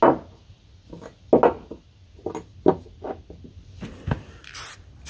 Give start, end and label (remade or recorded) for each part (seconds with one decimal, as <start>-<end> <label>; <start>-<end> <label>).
0.0-5.1 recorded